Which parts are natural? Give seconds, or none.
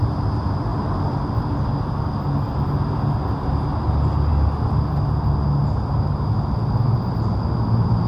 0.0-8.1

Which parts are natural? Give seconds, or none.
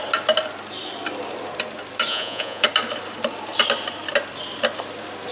0.0-2.1; 2.6-5.3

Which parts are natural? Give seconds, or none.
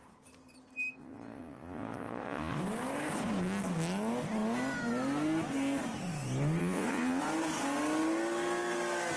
0.0-1.0; 2.6-6.6; 7.2-9.2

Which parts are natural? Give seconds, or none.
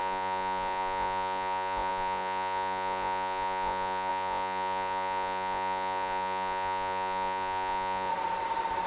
8.1-8.9